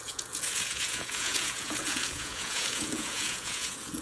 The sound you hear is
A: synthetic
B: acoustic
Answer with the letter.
A